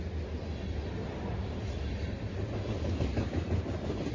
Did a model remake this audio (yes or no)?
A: no